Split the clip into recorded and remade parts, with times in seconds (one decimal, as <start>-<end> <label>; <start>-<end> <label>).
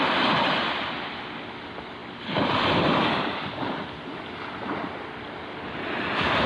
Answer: 0.0-6.5 recorded